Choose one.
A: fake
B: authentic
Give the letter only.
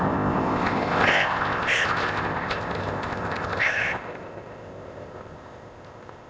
A